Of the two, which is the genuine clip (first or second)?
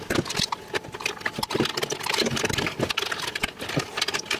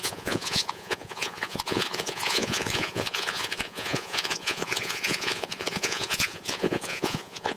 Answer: first